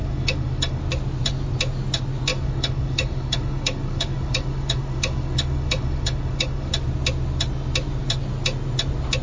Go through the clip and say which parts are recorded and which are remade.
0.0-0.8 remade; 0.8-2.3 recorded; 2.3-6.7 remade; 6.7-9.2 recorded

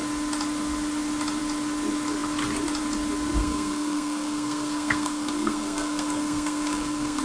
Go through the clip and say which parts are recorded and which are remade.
0.0-3.4 recorded; 3.4-7.2 remade

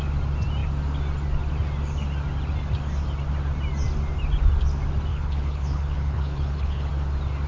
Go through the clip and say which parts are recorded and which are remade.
0.0-5.1 recorded; 5.1-6.9 remade; 6.9-7.5 recorded

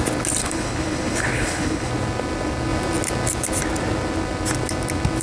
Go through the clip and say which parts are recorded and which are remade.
0.0-0.4 recorded; 0.4-1.9 remade; 1.9-5.2 recorded

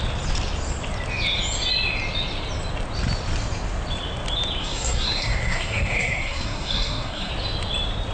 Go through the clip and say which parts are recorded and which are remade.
0.0-4.6 recorded; 4.6-7.3 remade; 7.3-8.1 recorded